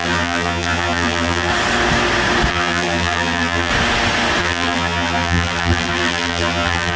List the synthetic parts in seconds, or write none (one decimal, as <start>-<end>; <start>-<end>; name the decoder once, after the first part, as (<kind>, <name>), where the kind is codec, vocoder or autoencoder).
0.0-1.5 (vocoder, BigVGAN v2); 2.5-3.7; 4.4-7.0